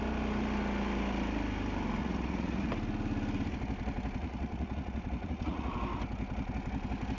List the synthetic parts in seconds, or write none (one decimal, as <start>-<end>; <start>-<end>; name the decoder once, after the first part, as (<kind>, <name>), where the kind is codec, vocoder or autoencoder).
2.0-2.7 (vocoder, Vocos); 4.2-5.7